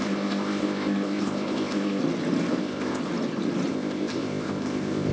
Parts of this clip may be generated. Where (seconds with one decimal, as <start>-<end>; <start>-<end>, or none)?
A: 0.0-2.0; 2.6-3.0; 3.7-5.1